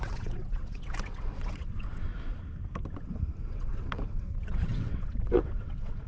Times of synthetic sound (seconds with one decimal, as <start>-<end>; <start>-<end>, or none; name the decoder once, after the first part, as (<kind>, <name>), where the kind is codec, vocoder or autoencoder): 0.0-2.1 (vocoder, WaveNeXt); 3.4-6.1